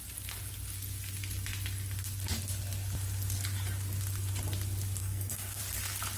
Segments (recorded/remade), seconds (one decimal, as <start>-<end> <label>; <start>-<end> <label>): 0.0-5.0 recorded; 5.0-5.6 remade; 5.6-6.2 recorded